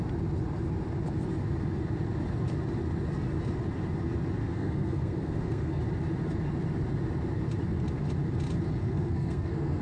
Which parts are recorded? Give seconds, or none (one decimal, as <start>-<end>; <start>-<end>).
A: 0.0-4.4; 5.8-8.8